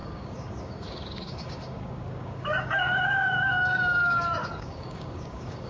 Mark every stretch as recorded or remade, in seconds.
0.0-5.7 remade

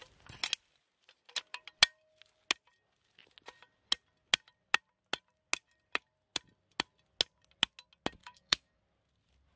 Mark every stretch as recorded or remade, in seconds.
0.0-8.2 recorded; 8.2-8.8 remade; 8.8-9.6 recorded